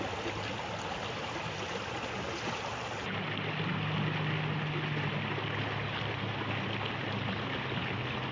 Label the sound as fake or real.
real